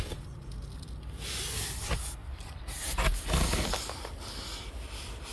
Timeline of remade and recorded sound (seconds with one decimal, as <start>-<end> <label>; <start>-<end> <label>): 0.0-2.2 recorded; 2.2-3.0 remade; 3.0-5.3 recorded